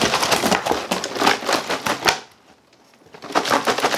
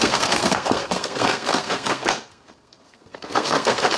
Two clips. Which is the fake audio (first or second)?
second